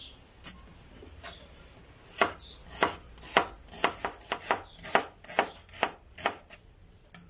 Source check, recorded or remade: recorded